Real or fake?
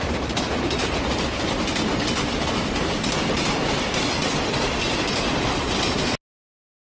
real